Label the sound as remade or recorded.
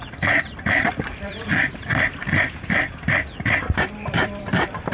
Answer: remade